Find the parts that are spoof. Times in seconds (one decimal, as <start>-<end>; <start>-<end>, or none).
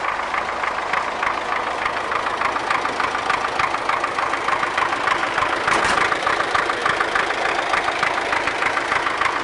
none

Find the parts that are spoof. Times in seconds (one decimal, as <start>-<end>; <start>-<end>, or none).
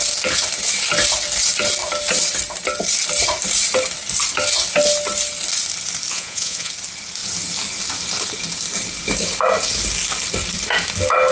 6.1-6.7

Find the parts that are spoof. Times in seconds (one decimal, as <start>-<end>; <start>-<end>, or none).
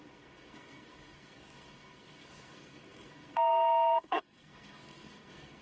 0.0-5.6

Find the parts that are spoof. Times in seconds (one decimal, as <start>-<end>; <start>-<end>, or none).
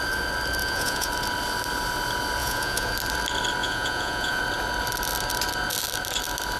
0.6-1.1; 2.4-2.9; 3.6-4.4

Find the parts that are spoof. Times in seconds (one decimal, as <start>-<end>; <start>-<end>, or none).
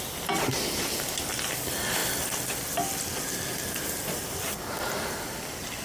none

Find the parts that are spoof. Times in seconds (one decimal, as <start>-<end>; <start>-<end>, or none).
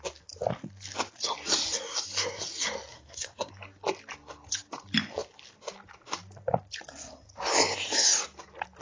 2.9-3.5